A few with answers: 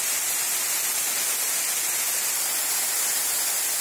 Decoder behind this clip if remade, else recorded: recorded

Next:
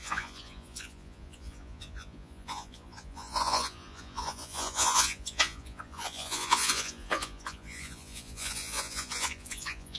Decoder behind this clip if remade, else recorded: remade, vocoder, Vocos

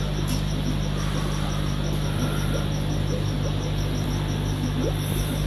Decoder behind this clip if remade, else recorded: recorded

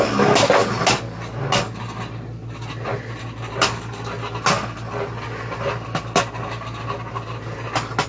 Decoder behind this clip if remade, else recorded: recorded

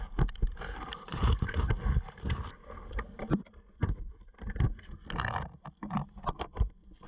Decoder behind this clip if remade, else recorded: recorded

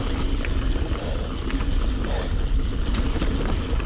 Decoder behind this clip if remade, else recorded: recorded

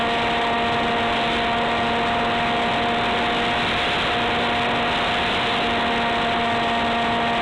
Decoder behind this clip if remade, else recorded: recorded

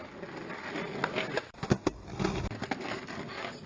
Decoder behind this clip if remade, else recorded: recorded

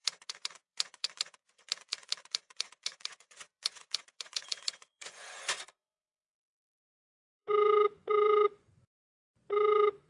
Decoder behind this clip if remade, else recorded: remade, vocoder, Vocos